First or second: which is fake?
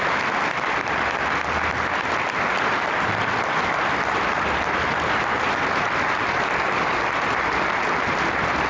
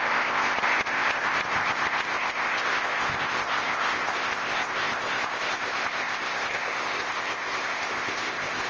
second